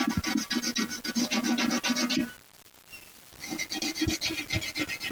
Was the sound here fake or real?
real